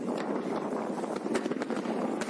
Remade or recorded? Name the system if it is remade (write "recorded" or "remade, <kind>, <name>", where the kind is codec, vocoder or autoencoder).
recorded